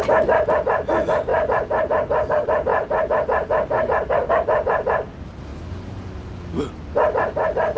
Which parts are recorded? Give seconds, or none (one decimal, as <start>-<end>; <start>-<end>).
0.0-7.8